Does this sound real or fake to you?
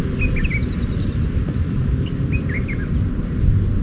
real